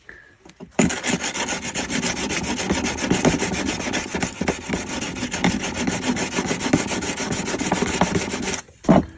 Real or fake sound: real